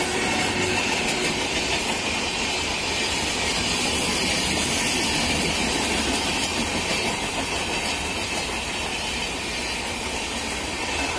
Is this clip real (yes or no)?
yes